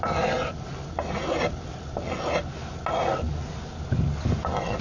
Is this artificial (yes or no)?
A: no